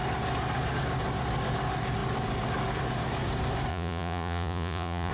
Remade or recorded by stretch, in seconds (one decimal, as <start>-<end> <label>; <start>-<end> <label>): 0.0-3.7 recorded; 3.7-5.1 remade